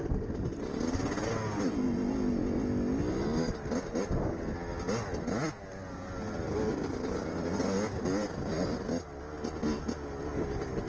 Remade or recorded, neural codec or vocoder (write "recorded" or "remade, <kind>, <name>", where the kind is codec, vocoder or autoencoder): recorded